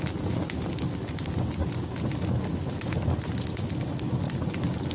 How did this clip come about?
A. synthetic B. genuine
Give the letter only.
B